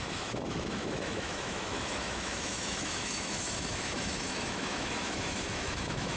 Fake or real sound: fake